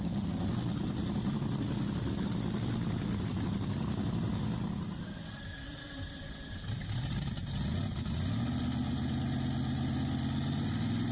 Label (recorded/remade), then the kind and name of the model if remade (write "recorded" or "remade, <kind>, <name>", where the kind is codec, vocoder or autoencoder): recorded